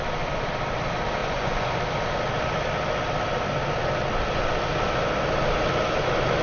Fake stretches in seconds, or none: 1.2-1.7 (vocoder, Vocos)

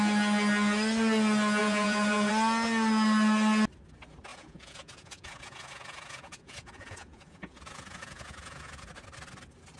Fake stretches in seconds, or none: 1.6-2.3 (vocoder, Vocos); 4.3-8.9